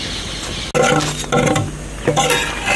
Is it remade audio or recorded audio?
recorded